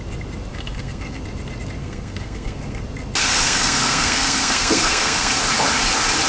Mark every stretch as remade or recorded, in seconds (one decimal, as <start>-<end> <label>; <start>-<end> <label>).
0.0-0.5 recorded; 0.5-1.2 remade; 1.2-1.8 recorded; 1.8-2.8 remade; 2.8-3.2 recorded; 3.2-5.3 remade; 5.3-6.3 recorded